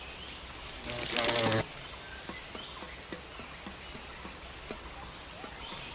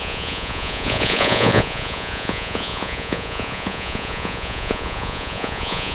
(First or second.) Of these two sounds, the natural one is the first